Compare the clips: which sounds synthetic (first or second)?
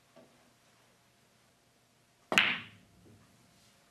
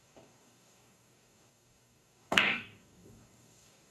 second